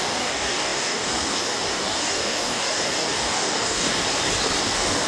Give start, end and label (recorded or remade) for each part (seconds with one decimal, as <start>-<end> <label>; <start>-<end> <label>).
0.0-4.0 remade; 4.0-4.6 recorded; 4.6-5.1 remade